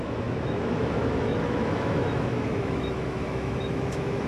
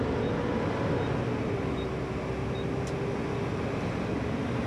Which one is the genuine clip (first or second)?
second